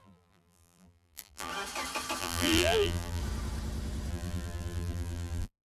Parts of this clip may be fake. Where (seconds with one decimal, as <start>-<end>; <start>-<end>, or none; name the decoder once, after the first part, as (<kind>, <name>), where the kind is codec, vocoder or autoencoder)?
0.0-1.5 (vocoder, BigVGAN v2); 2.2-3.2; 4.1-5.7

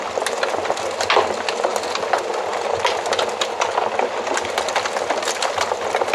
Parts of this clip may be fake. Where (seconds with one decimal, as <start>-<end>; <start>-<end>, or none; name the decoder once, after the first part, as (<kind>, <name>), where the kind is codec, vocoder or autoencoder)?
none

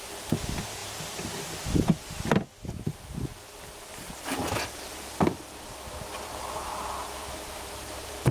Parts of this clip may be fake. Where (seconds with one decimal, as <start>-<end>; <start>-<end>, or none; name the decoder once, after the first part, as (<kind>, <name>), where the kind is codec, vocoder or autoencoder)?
0.8-1.8 (vocoder, BigVGAN v2); 3.3-8.3

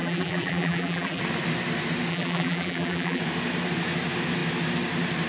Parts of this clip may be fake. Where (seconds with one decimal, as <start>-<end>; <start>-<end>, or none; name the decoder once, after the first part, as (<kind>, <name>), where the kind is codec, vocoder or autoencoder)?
0.0-1.2 (vocoder, BigVGAN v2); 2.1-3.2

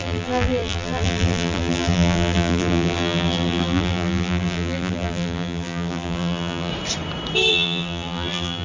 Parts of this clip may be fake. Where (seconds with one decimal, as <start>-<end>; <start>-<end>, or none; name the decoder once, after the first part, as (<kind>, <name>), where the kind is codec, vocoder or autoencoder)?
0.0-6.7 (vocoder, BigVGAN v2); 7.5-8.6